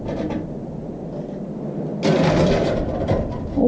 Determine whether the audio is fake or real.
real